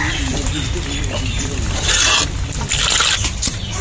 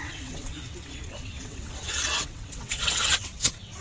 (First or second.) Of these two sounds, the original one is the first